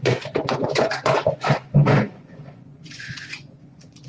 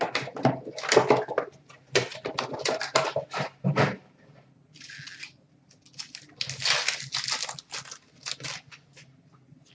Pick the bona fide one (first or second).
second